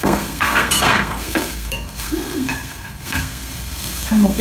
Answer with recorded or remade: remade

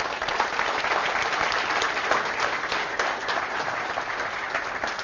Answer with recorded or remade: recorded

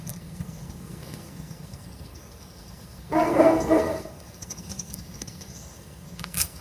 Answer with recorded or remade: remade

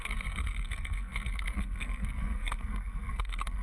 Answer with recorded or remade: remade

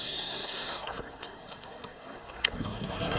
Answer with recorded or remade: remade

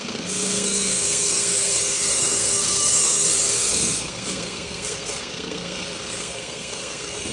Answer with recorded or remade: remade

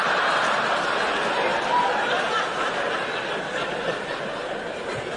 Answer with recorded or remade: recorded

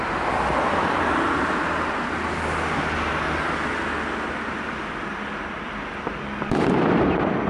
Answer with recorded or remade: recorded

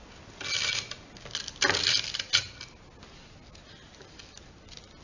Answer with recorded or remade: recorded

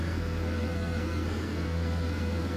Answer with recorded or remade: remade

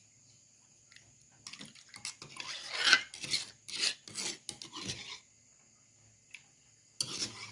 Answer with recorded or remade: recorded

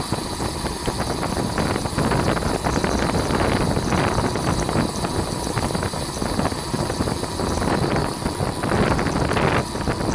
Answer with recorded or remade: recorded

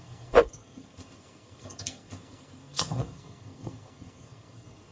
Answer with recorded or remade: remade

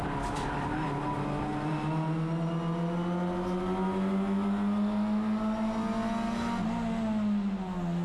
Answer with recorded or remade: recorded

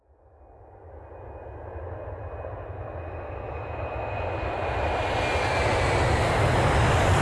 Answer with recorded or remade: recorded